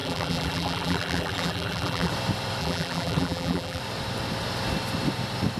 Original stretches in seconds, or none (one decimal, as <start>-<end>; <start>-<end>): 2.1-2.6; 3.8-5.6